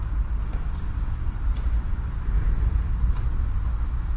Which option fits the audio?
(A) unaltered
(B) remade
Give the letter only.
A